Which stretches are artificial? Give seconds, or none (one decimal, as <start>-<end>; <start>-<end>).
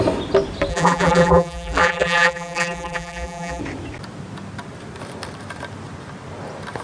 0.7-3.6